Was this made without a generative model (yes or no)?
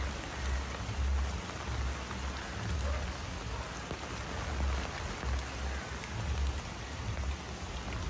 yes